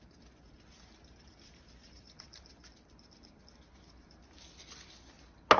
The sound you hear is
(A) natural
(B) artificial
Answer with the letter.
A